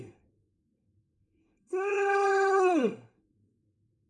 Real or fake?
fake